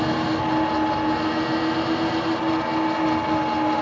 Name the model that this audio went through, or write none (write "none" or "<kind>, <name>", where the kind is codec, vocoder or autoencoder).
none